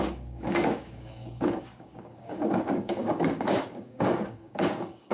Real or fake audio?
fake